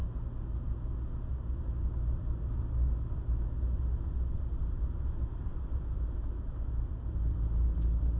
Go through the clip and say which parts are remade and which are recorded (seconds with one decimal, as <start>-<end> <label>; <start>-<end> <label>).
0.0-8.2 recorded